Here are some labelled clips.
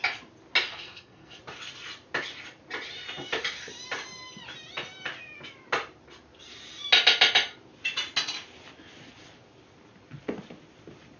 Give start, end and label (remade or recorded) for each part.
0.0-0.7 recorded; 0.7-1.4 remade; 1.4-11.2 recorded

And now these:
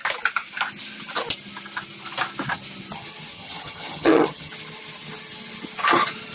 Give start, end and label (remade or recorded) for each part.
0.0-3.3 recorded; 3.3-4.5 remade; 4.5-6.3 recorded

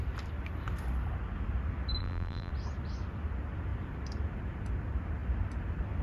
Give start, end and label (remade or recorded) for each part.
0.0-2.0 recorded; 2.0-2.5 remade; 2.5-6.0 recorded

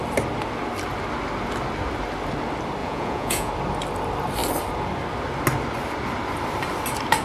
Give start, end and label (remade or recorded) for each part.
0.0-2.8 recorded; 2.8-3.5 remade; 3.5-7.2 recorded

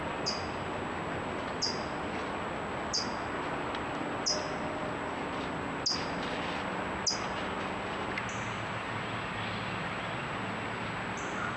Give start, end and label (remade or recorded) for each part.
0.0-11.6 recorded

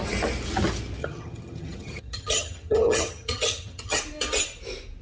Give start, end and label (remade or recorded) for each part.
0.0-1.0 recorded; 1.0-4.0 remade; 4.0-5.0 recorded

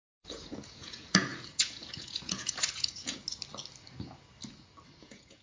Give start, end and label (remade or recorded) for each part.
0.0-3.2 remade; 3.2-5.0 recorded; 5.0-5.4 remade